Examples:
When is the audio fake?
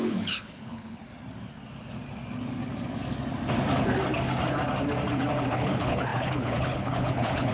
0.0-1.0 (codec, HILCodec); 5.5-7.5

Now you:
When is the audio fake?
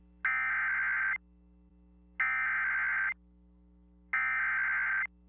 none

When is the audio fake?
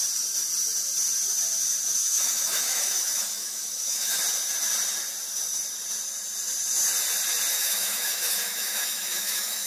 2.0-4.2 (autoencoder, DAC-VAE); 7.5-9.7